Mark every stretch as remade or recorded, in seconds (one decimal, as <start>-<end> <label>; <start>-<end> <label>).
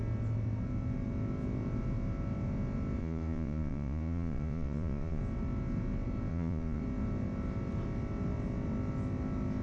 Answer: 0.0-3.0 recorded; 3.0-5.2 remade; 5.2-6.3 recorded; 6.3-6.8 remade; 6.8-9.6 recorded